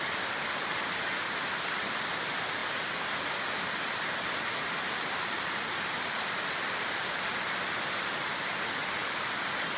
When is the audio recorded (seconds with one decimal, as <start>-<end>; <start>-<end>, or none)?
0.0-9.8